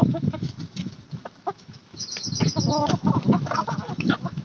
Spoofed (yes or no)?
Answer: yes